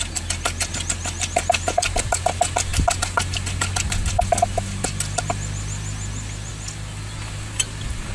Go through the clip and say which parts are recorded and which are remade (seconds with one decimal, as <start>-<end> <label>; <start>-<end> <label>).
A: 0.0-8.1 recorded

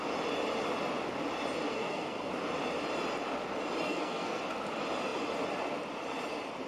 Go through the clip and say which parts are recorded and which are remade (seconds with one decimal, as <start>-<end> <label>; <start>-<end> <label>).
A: 0.0-1.7 recorded; 1.7-2.3 remade; 2.3-3.9 recorded; 3.9-4.4 remade; 4.4-6.7 recorded